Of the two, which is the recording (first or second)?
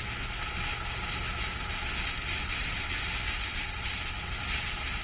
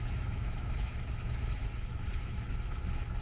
first